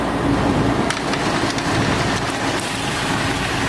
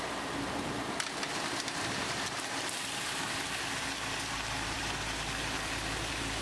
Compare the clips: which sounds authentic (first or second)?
first